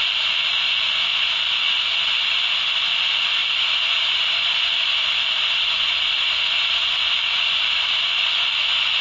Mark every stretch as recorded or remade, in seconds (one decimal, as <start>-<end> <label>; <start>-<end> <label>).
0.0-9.0 recorded